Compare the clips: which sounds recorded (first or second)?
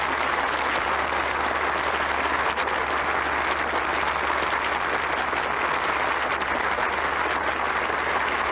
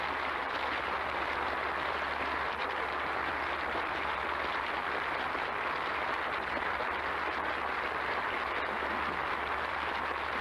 first